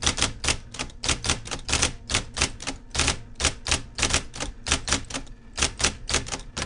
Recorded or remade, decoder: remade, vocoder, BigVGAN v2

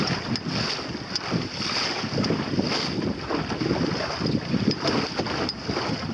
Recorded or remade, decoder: recorded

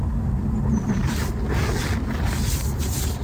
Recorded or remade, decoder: recorded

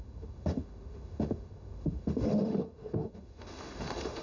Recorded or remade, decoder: remade, autoencoder, DAC-VAE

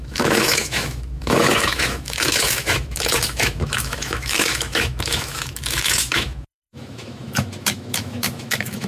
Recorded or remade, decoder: remade, autoencoder, DAC-VAE